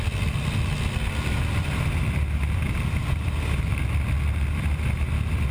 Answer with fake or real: real